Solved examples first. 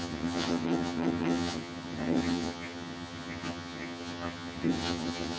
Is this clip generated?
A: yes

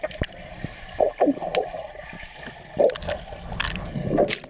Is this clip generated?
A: no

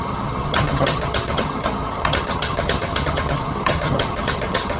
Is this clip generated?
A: yes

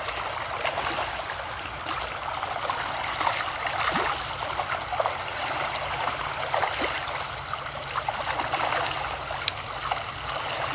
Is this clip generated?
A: no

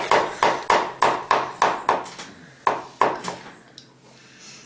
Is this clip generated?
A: no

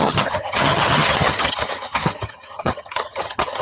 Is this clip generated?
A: yes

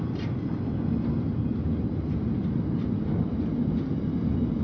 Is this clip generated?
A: no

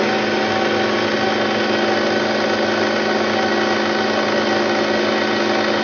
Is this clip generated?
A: no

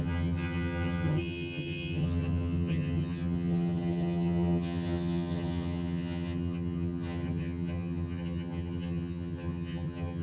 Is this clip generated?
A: yes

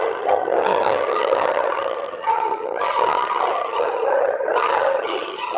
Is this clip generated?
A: yes